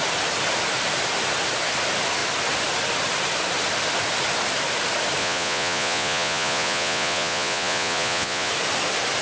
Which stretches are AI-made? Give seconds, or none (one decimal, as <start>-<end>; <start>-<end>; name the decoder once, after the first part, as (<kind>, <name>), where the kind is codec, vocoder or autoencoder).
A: 5.2-8.5 (vocoder, Vocos)